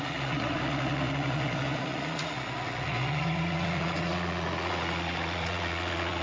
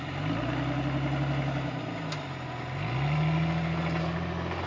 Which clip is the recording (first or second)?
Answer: second